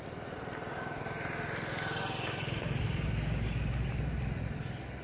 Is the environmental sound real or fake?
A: fake